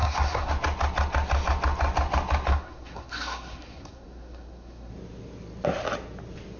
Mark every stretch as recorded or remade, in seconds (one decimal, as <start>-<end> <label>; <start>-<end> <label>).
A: 0.0-0.5 remade; 0.5-2.5 recorded; 2.5-4.9 remade; 4.9-6.6 recorded